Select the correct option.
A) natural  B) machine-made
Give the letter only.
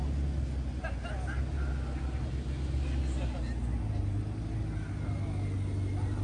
A